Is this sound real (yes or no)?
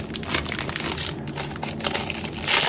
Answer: yes